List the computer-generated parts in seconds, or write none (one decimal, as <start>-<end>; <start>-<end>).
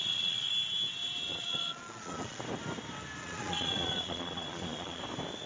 0.0-0.5; 1.3-2.4; 3.2-5.0